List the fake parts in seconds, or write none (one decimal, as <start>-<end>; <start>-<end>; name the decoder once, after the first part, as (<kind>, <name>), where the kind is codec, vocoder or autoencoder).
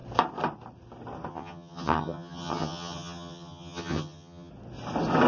1.3-4.5 (vocoder, HiFi-GAN)